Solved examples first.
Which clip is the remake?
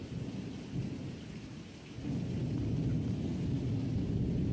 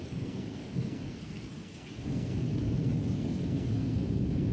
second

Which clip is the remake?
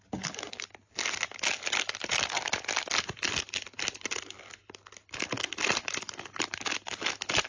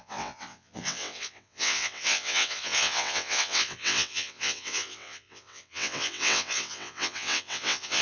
second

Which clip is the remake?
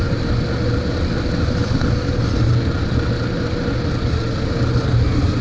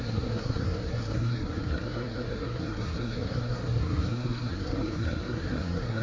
second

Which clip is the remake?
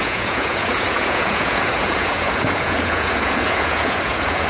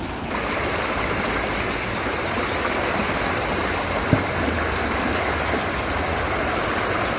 first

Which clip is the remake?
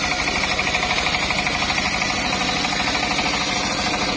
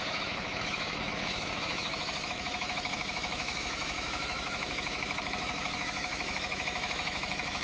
second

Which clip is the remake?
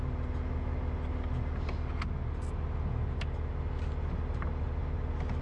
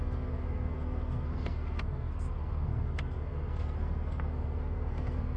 second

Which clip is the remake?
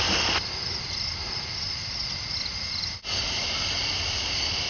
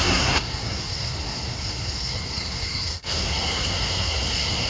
second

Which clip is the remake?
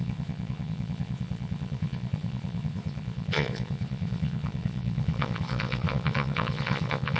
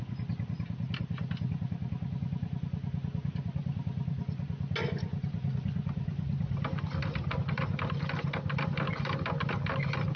first